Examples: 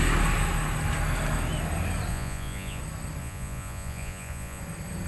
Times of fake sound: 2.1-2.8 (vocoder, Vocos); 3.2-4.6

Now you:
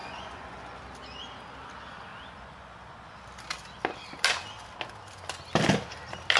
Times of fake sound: 0.0-0.8 (vocoder, Vocos); 2.1-3.2

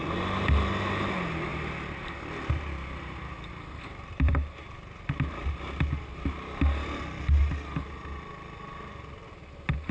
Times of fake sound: none